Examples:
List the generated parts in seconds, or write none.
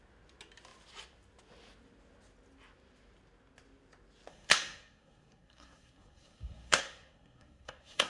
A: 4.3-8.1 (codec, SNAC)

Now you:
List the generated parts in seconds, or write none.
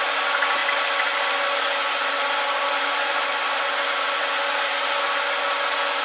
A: none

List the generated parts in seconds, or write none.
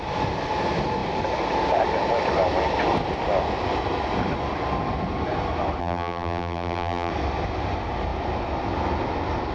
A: 5.8-7.1 (vocoder, BigVGAN v2)